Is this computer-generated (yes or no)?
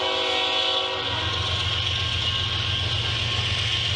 no